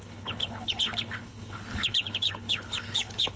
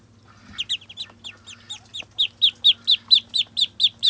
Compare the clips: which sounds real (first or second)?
second